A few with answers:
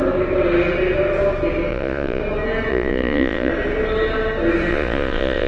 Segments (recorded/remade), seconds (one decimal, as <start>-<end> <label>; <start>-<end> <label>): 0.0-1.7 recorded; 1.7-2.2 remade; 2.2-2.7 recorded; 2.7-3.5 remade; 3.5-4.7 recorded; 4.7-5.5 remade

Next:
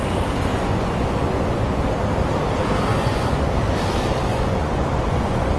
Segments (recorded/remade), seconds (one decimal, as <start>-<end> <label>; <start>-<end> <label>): 0.0-0.5 recorded; 0.5-1.8 remade; 1.8-2.9 recorded; 2.9-3.5 remade; 3.5-4.3 recorded; 4.3-5.6 remade

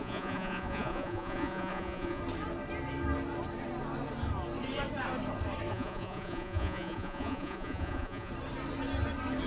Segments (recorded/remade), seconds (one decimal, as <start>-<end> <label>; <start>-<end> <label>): 0.0-2.2 remade; 2.2-5.7 recorded; 5.7-8.3 remade; 8.3-9.5 recorded

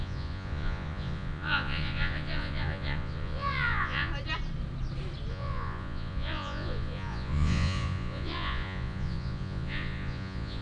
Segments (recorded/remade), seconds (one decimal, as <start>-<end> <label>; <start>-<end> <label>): 0.0-4.1 remade; 4.1-5.3 recorded; 5.3-10.6 remade